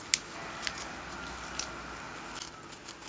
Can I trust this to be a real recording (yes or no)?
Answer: yes